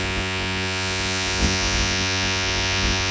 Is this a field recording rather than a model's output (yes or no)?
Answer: no